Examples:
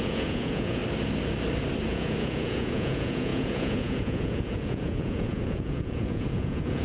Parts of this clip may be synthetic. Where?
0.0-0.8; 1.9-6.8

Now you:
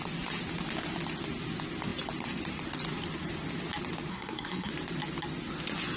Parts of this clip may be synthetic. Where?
4.1-4.7

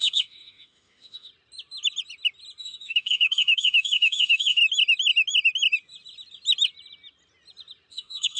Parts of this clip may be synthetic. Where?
0.0-1.3; 2.6-4.6; 7.9-8.4

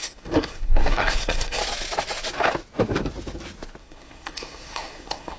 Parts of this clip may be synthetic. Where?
0.0-1.6; 3.8-5.4

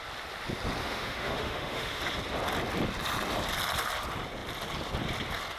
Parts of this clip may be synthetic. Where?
0.8-2.0

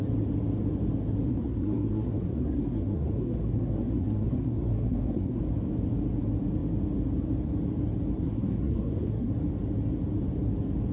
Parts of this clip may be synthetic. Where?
1.3-5.4; 8.2-9.3

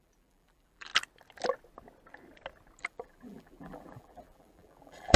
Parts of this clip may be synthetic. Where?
0.0-0.9; 2.8-5.2

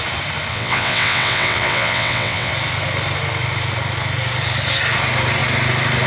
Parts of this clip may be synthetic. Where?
0.5-2.5